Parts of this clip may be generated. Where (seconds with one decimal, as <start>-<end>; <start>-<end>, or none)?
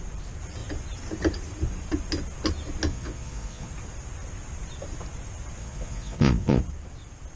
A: 2.9-3.7; 5.6-6.6